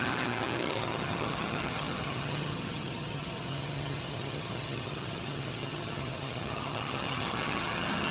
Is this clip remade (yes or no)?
yes